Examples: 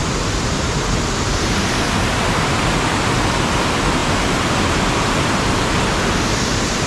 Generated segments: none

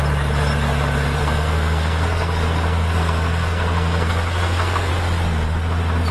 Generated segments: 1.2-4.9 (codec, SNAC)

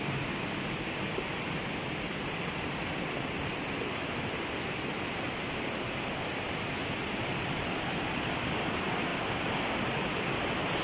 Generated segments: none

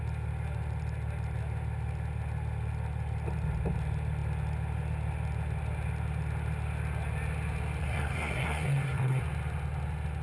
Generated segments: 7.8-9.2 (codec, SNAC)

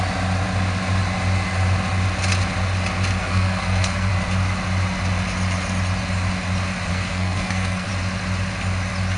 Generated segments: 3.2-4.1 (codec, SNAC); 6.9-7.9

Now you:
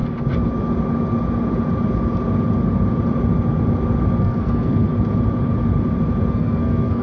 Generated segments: 4.2-4.9 (codec, SNAC); 6.3-7.0

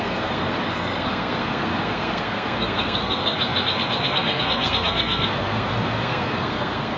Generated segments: 0.0-7.0 (codec, SNAC)